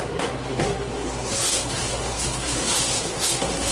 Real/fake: fake